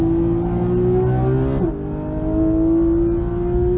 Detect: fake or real real